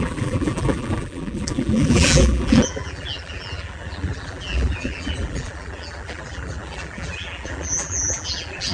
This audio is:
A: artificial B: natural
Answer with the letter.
A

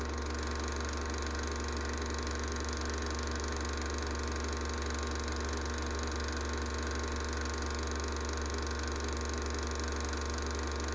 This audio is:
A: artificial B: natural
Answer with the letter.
B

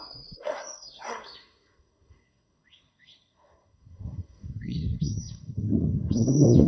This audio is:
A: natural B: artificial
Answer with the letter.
B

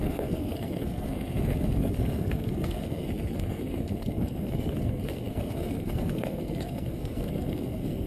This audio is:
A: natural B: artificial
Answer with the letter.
B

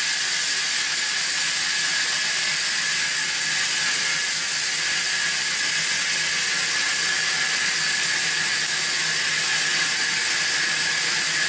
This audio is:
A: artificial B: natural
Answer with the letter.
B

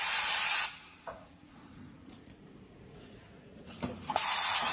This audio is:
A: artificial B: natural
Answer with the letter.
A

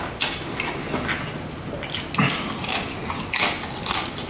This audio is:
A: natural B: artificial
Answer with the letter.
A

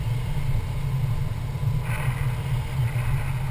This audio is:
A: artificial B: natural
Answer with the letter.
B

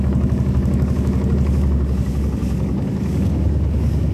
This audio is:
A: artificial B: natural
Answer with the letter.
A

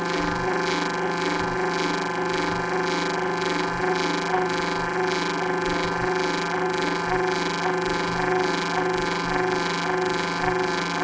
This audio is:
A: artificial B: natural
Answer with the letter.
A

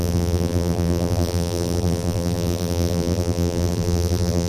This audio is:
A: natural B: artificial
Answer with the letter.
B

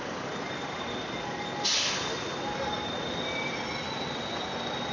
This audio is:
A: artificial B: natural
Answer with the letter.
B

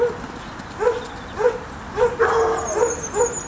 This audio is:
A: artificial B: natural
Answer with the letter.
B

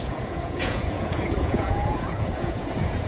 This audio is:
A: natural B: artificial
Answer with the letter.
B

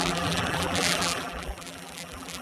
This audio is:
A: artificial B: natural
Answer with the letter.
A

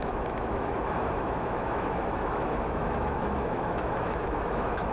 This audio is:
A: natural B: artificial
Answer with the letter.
B